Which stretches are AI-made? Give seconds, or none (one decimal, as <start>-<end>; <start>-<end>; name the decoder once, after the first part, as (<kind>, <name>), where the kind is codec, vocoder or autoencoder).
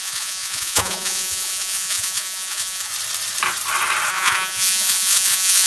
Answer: 0.0-2.9 (vocoder, Vocos); 4.1-5.7